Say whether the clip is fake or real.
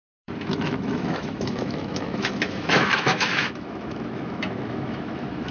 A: fake